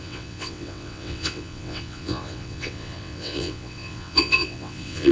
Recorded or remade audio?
remade